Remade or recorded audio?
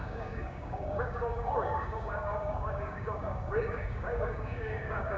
remade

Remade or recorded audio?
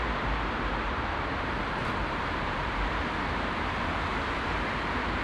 remade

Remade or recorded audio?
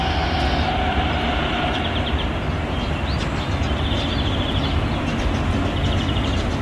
remade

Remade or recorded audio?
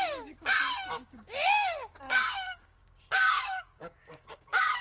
remade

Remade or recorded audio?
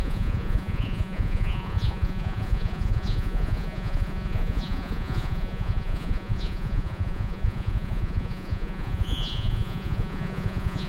remade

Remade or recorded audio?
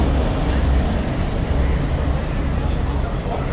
recorded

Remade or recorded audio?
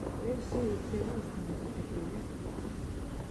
recorded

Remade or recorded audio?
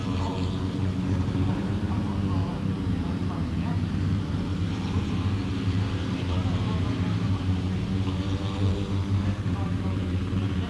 remade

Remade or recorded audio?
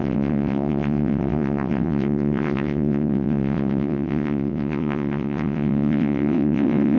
remade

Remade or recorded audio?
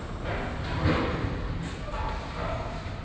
recorded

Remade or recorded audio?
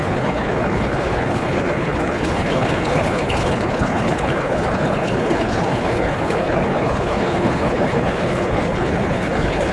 remade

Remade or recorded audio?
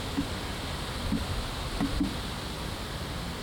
recorded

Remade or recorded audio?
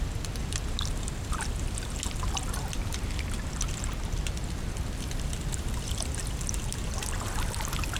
recorded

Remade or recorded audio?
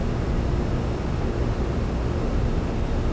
recorded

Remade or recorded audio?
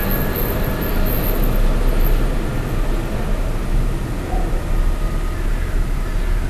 recorded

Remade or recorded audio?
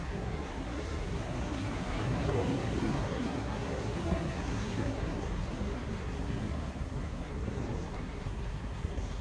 remade